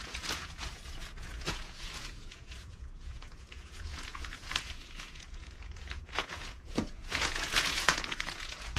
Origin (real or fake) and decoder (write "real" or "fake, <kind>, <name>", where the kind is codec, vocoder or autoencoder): fake, vocoder, Vocos